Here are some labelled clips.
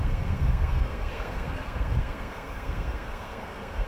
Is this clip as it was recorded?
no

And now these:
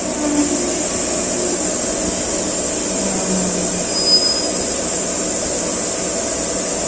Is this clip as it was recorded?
yes